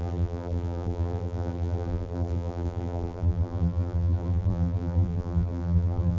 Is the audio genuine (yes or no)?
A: no